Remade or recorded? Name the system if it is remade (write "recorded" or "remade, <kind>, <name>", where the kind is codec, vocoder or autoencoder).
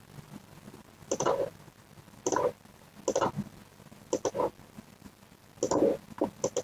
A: recorded